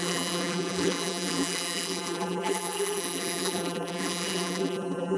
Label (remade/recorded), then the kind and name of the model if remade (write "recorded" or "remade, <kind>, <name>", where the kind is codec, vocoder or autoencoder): remade, vocoder, BigVGAN v2